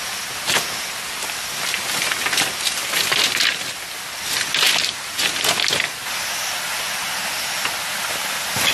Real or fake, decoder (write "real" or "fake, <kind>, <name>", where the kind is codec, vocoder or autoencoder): real